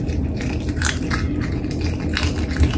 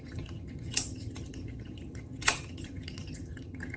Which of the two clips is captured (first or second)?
first